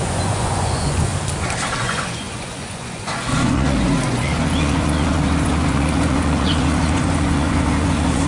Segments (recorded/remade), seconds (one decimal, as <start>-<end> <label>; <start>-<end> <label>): 0.0-1.1 remade; 1.1-1.8 recorded; 1.8-8.3 remade